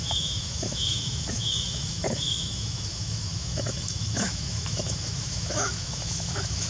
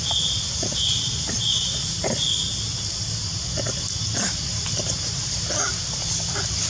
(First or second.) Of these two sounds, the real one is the second